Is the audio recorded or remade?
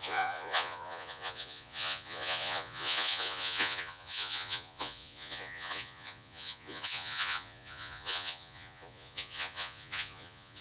remade